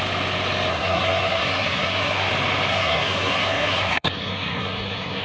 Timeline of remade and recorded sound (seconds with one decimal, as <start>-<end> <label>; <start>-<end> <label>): 0.0-0.7 recorded; 0.7-2.3 remade; 2.3-2.7 recorded; 2.7-5.2 remade